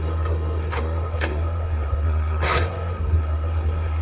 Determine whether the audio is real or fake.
fake